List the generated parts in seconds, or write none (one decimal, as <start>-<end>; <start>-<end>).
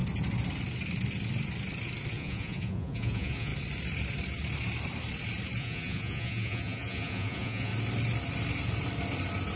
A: 2.1-3.5; 5.6-7.7